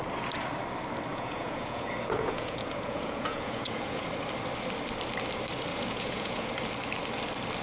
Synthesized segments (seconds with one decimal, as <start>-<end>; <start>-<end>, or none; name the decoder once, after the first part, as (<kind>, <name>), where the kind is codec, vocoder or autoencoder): 1.1-4.1 (vocoder, Vocos); 5.7-6.5